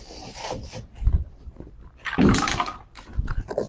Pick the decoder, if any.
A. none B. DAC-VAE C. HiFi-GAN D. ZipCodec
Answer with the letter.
A